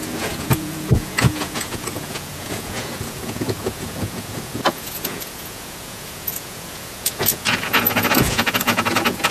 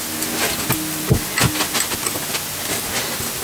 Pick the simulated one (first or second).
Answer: first